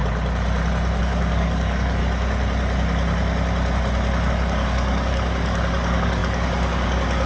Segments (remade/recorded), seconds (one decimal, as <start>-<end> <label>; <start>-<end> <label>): 0.0-1.0 recorded; 1.0-2.0 remade; 2.0-4.3 recorded; 4.3-7.3 remade